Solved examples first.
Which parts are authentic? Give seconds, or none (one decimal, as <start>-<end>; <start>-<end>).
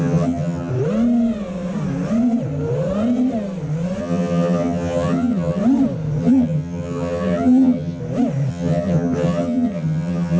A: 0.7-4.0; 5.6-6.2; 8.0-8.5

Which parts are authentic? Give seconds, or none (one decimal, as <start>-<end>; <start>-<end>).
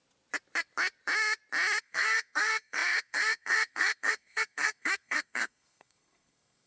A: 0.0-1.8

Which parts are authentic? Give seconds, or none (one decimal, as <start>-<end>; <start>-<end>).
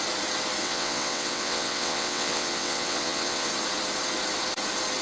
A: 0.0-0.6; 3.5-5.0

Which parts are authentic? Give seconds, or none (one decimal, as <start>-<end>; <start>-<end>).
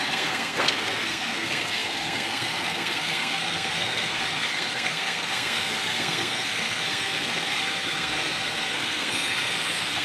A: none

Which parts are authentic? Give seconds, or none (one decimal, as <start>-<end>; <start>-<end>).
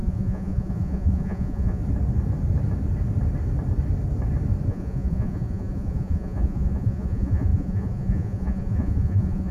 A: 1.8-4.7